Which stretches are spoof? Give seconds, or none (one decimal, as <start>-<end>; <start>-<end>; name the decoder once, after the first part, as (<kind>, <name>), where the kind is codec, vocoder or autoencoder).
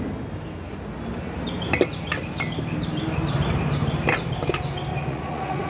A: 4.9-5.7 (vocoder, Vocos)